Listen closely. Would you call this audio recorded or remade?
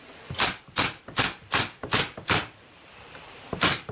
recorded